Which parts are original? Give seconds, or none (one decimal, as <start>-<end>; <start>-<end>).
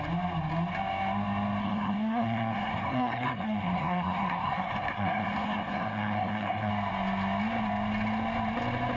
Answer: 0.0-1.6; 6.7-9.0